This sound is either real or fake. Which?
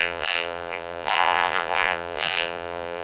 fake